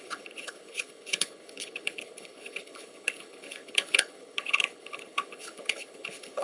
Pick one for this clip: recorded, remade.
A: remade